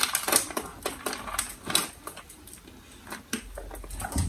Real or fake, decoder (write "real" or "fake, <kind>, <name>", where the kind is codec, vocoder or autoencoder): real